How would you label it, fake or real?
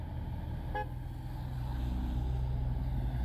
real